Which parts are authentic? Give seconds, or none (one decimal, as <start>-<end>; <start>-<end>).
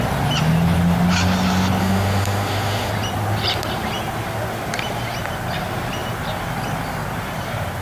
0.0-1.8; 2.9-7.8